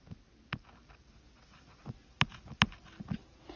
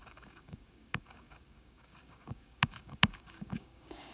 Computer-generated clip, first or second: second